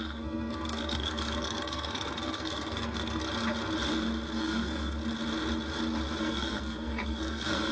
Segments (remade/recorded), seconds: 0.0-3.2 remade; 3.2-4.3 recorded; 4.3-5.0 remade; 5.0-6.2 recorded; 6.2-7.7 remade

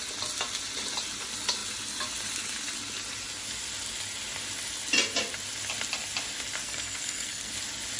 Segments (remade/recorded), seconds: 0.0-6.6 recorded; 6.6-7.5 remade; 7.5-8.0 recorded

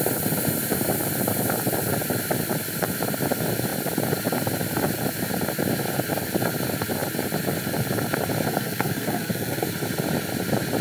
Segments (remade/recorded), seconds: 0.0-8.5 recorded; 8.5-9.7 remade; 9.7-10.8 recorded

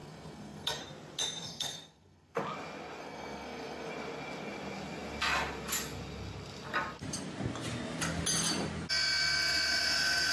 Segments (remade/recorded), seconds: 0.0-0.8 remade; 0.8-1.4 recorded; 1.4-2.4 remade; 2.4-3.0 recorded; 3.0-3.9 remade; 3.9-10.3 recorded

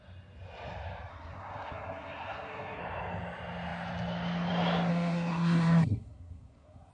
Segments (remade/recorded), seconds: 0.0-1.1 recorded; 1.1-2.8 remade; 2.8-4.9 recorded; 4.9-6.9 remade

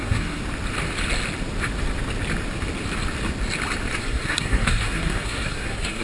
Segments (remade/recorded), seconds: 0.0-0.4 remade; 0.4-4.0 recorded; 4.0-6.0 remade

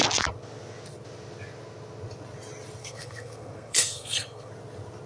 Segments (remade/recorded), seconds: 0.0-2.8 recorded; 2.8-4.5 remade; 4.5-5.1 recorded

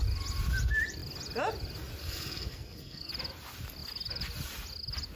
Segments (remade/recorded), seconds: 0.0-2.0 recorded; 2.0-3.1 remade; 3.1-5.2 recorded